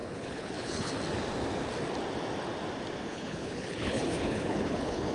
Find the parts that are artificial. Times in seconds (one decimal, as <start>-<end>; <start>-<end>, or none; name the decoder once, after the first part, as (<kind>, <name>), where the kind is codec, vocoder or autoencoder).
0.0-0.9 (codec, HILCodec); 3.1-5.1